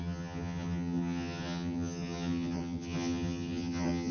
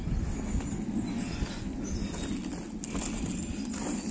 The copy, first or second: first